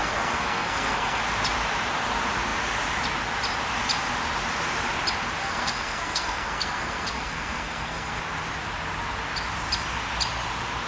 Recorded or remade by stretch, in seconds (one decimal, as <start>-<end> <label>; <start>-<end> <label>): 0.0-1.2 remade; 1.2-5.4 recorded; 5.4-8.2 remade; 8.2-10.9 recorded